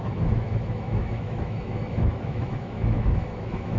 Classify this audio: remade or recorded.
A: remade